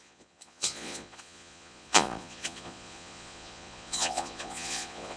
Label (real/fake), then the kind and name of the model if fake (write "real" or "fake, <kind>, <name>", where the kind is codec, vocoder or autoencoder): fake, vocoder, Vocos